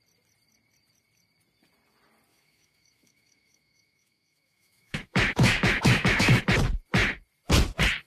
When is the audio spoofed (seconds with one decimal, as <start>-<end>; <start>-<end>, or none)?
2.3-6.4